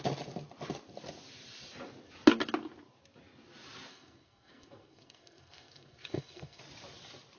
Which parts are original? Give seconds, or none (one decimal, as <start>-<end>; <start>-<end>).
0.0-3.9; 6.6-7.4